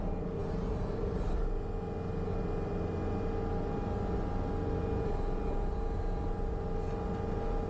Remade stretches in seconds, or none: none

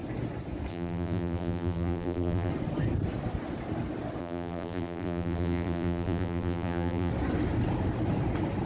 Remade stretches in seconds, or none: 0.7-2.5; 4.2-7.1